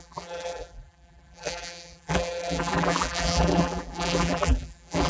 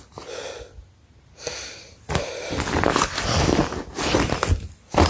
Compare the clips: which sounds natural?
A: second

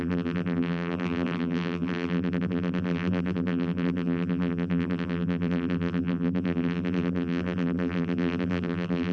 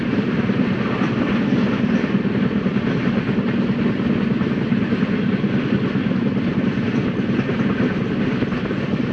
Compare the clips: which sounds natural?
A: second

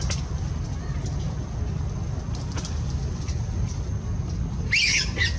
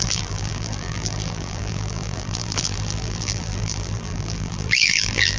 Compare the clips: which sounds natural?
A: first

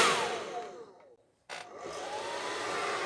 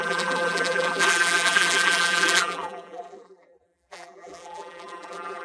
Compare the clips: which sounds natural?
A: first